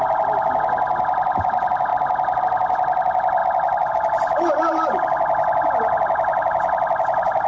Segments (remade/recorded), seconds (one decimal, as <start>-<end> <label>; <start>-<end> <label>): 0.0-7.5 recorded